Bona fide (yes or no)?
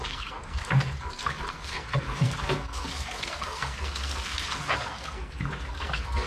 no